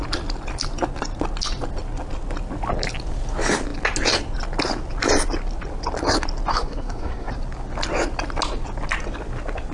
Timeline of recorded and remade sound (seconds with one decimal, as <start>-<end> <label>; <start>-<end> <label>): 0.0-6.5 recorded; 6.5-7.3 remade; 7.3-9.7 recorded